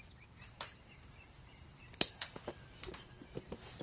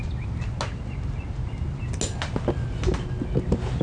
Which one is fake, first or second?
first